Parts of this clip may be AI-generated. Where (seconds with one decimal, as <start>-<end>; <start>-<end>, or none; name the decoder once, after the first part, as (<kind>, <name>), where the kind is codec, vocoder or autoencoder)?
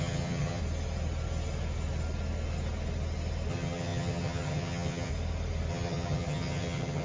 0.0-0.6 (vocoder, HiFi-GAN); 3.5-5.1; 5.7-7.0